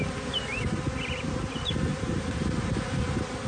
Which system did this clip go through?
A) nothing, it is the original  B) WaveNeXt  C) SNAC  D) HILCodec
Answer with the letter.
A